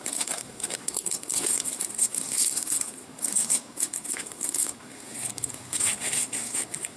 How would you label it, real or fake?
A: fake